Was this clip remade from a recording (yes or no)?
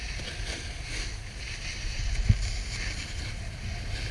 no